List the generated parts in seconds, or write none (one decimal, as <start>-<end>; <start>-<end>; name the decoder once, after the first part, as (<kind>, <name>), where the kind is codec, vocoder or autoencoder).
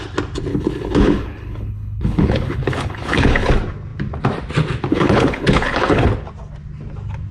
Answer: 0.5-3.5 (codec, HILCodec); 4.9-6.1